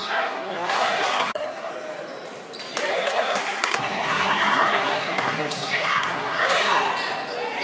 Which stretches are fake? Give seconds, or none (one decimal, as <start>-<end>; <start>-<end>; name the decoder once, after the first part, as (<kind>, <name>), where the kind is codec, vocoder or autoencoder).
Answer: 0.0-1.7 (codec, SNAC); 2.9-6.9